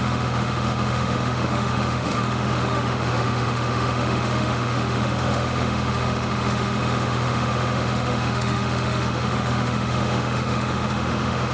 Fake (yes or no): yes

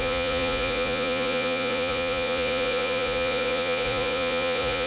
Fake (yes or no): yes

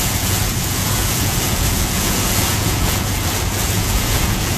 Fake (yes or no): yes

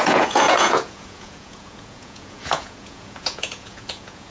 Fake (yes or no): yes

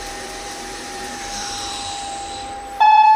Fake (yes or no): yes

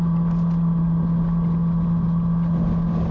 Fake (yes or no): no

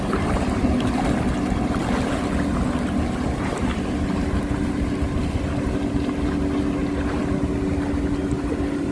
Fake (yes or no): no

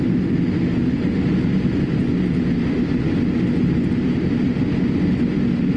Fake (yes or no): no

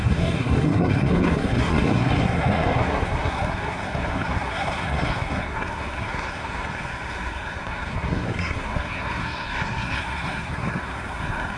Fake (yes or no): yes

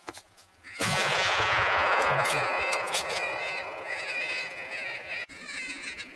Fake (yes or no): yes